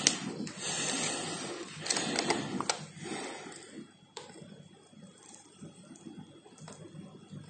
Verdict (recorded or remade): recorded